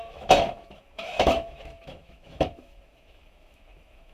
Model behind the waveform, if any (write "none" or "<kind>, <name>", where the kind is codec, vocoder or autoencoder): autoencoder, DAC-VAE